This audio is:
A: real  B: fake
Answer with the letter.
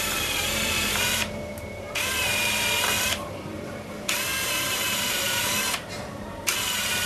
B